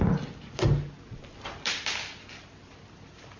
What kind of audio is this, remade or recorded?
recorded